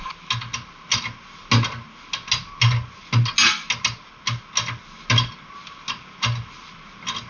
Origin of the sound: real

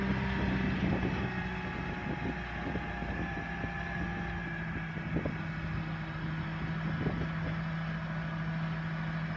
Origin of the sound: real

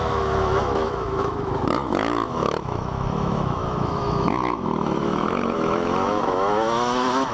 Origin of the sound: fake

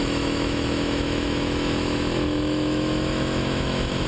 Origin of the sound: fake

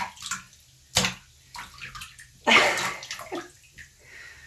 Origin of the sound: real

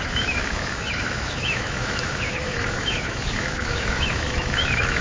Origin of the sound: fake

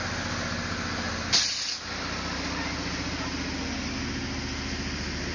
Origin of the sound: real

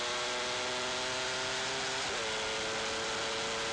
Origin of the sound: real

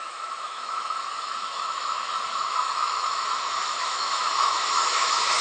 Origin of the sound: fake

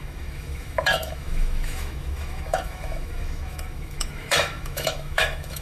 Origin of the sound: fake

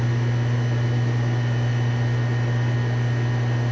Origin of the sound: real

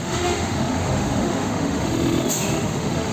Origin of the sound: fake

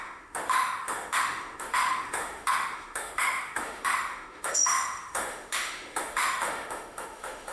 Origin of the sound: fake